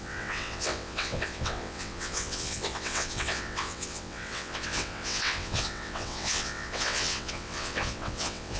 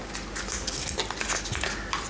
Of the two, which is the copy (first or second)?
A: first